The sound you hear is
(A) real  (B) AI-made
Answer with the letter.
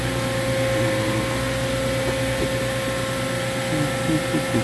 A